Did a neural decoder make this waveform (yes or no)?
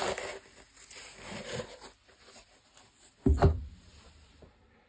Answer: no